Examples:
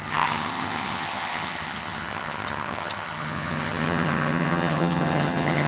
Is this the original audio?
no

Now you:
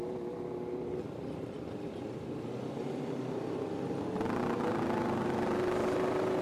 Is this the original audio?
yes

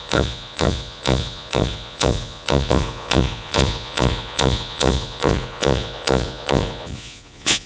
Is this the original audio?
no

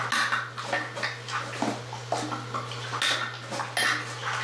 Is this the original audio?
yes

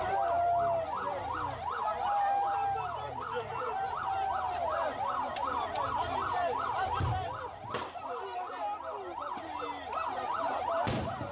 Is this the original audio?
yes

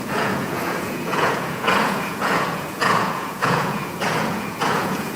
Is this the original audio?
no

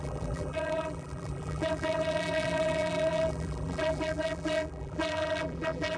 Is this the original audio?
no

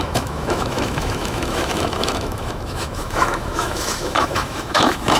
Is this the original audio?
no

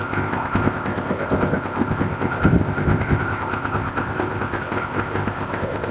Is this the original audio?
no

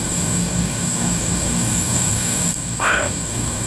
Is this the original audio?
no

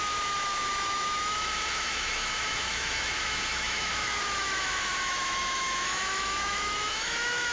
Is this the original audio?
no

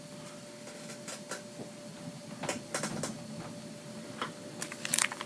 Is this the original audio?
yes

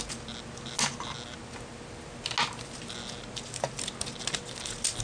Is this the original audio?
yes